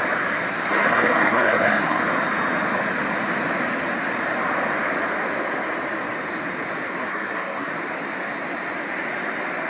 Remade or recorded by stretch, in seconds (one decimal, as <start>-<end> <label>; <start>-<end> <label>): 0.0-0.5 recorded; 0.5-2.0 remade; 2.0-7.1 recorded; 7.1-7.7 remade; 7.7-9.7 recorded